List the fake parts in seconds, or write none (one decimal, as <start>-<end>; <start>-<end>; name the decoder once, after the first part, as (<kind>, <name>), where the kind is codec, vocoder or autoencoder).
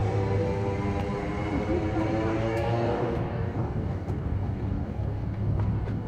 2.3-6.1 (codec, DAC)